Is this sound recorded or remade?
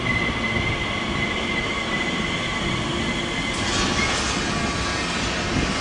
recorded